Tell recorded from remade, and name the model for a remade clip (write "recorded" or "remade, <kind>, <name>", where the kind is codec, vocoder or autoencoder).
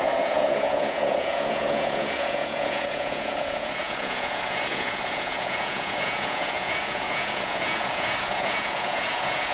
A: remade, vocoder, Vocos